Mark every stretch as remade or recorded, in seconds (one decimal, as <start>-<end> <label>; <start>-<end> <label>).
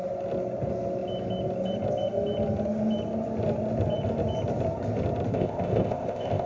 0.0-5.3 recorded; 5.3-6.5 remade